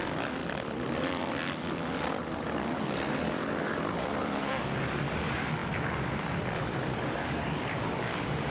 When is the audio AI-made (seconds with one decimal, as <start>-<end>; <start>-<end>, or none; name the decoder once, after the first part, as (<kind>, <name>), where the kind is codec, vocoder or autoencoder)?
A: 0.0-0.4 (codec, DAC); 2.2-8.5